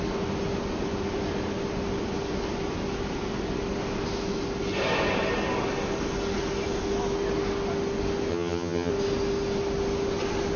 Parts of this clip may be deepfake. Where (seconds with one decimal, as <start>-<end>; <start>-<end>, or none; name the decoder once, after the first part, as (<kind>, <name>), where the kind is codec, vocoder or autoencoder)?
8.3-8.9 (vocoder, HiFi-GAN)